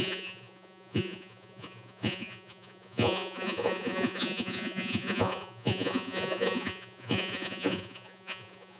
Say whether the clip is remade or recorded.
remade